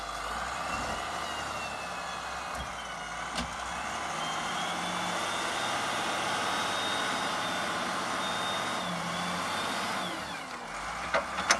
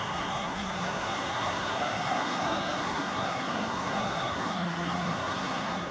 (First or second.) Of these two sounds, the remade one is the second